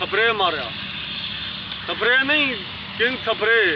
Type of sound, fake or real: real